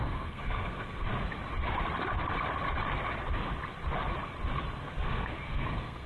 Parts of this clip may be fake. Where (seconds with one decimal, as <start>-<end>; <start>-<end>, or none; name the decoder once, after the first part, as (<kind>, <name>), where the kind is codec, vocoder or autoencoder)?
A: 0.0-1.1 (codec, SNAC); 4.8-6.1